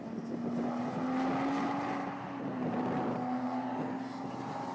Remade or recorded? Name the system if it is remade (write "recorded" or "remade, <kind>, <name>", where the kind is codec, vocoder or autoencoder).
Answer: recorded